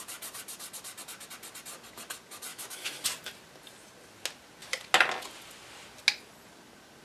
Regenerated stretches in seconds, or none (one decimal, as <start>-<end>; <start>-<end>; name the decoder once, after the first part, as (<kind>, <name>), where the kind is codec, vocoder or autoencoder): 2.5-3.0 (autoencoder, DAC-VAE)